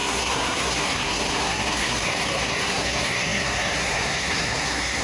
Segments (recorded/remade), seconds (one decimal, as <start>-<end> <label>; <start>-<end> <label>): 0.0-5.0 remade